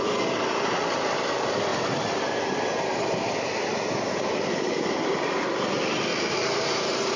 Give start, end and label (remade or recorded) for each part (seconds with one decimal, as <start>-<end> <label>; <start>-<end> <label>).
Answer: 0.0-1.7 recorded; 1.7-5.4 remade; 5.4-6.1 recorded; 6.1-7.2 remade